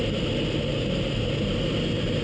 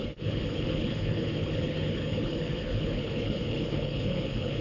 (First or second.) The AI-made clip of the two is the second